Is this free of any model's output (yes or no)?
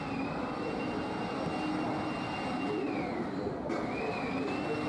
yes